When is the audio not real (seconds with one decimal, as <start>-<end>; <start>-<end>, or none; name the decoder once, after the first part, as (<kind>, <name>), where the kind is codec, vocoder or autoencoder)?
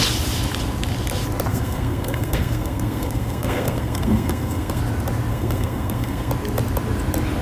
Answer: 1.5-4.8 (codec, SNAC); 5.3-6.3